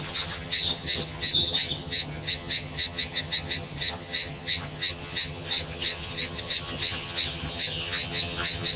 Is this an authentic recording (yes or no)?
no